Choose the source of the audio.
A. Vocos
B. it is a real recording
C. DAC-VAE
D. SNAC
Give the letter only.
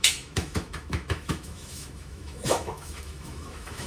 C